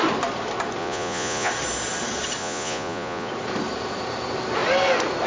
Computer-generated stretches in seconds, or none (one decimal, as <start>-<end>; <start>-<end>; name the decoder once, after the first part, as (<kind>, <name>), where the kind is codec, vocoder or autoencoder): 0.8-1.5 (vocoder, Vocos); 2.4-3.3